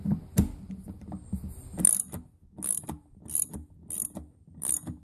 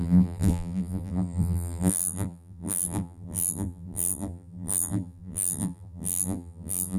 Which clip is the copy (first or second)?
second